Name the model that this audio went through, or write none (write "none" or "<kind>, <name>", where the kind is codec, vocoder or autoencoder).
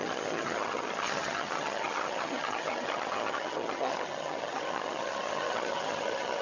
vocoder, HiFi-GAN